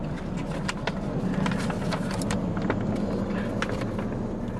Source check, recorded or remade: recorded